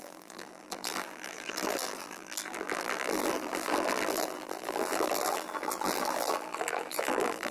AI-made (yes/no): yes